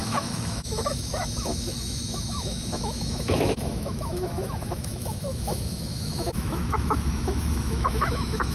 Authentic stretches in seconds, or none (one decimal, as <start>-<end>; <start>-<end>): none